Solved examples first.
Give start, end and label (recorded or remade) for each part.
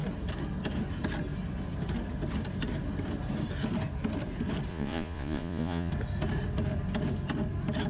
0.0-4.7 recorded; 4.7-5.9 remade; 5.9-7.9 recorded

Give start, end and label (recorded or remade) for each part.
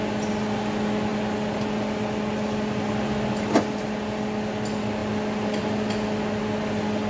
0.0-7.1 recorded